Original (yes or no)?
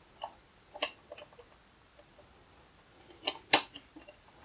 yes